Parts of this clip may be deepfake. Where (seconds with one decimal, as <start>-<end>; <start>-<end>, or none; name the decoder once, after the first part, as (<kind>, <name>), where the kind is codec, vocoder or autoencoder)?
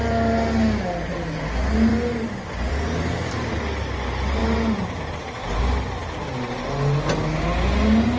none